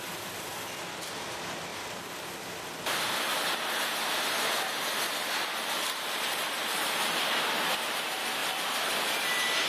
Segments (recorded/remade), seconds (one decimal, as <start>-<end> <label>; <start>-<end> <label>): 0.0-1.7 recorded; 1.7-2.3 remade; 2.3-9.7 recorded